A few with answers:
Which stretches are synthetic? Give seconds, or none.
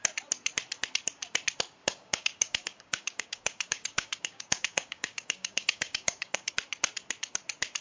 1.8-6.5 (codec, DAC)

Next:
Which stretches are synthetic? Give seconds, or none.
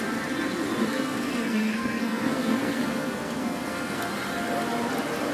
0.8-4.0 (codec, SNAC)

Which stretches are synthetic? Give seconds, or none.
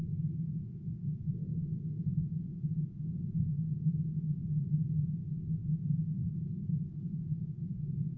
6.2-7.1 (codec, HILCodec)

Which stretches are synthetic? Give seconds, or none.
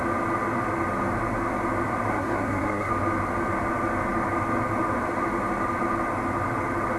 2.1-2.9 (codec, SNAC)